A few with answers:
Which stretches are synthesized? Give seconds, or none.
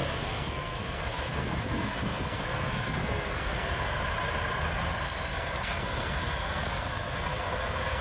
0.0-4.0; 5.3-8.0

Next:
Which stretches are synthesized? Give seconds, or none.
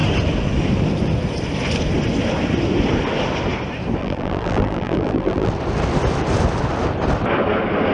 4.0-5.5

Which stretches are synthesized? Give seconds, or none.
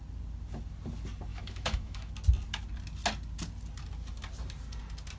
1.3-2.1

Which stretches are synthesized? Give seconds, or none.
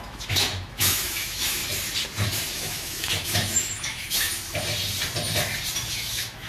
0.0-1.6; 2.5-4.3; 5.9-6.5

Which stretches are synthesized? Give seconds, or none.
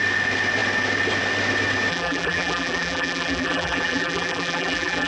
1.9-5.1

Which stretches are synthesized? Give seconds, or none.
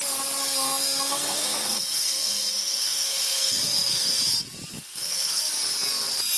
0.4-4.2; 4.7-5.5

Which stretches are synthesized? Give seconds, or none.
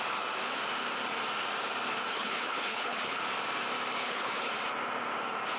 2.1-3.2; 4.0-4.5